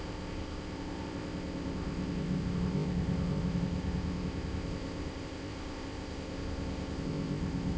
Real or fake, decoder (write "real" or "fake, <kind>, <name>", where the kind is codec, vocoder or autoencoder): fake, codec, ZipCodec